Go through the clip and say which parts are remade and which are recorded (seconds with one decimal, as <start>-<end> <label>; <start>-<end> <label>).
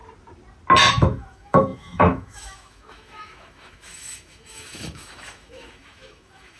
0.0-0.9 recorded; 0.9-6.6 remade